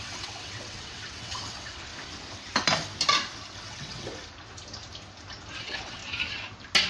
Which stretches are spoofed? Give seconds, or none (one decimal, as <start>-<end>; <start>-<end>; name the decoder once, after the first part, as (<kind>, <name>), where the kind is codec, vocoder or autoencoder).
0.0-1.9 (vocoder, WaveNeXt); 3.6-4.1; 5.6-6.0